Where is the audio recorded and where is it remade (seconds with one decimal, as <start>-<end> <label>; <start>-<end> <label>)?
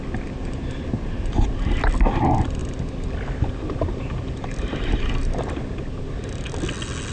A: 0.0-7.1 recorded